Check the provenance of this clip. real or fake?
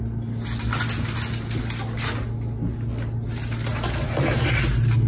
real